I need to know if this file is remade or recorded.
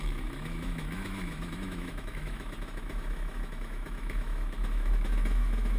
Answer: remade